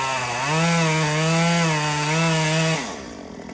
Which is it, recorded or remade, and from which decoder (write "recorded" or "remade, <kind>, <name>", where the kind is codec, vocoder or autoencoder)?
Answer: recorded